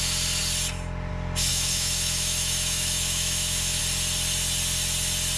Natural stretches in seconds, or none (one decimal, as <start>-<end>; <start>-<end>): 0.0-1.5; 3.8-5.4